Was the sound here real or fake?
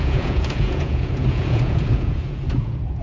fake